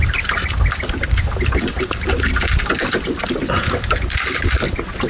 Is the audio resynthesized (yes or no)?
no